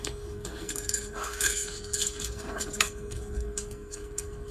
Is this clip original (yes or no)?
no